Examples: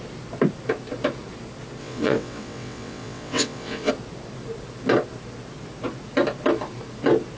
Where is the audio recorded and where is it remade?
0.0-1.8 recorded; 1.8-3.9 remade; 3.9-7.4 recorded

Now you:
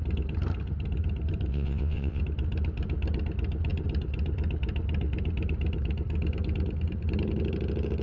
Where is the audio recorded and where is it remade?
0.0-1.5 recorded; 1.5-2.2 remade; 2.2-8.0 recorded

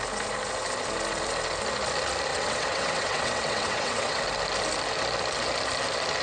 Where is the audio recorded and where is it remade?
0.0-2.3 recorded; 2.3-4.2 remade; 4.2-6.2 recorded

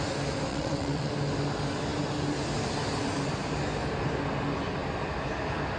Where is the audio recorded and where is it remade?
0.0-0.5 recorded; 0.5-1.1 remade; 1.1-5.8 recorded

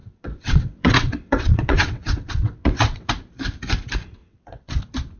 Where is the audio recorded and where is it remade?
0.0-3.1 remade; 3.1-4.2 recorded; 4.2-4.8 remade; 4.8-5.2 recorded